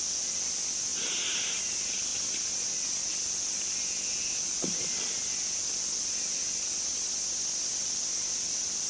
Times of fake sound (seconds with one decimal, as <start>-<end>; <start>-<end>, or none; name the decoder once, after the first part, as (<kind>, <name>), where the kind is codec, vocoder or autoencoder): 0.0-0.9 (vocoder, BigVGAN v2); 1.5-6.9; 7.7-8.9